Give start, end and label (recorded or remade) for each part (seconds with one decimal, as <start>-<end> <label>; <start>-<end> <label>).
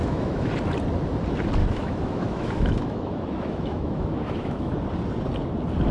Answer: 0.0-0.5 remade; 0.5-1.6 recorded; 1.6-4.7 remade; 4.7-5.9 recorded